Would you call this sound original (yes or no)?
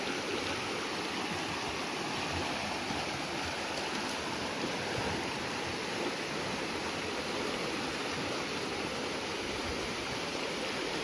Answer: yes